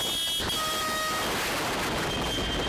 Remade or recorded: recorded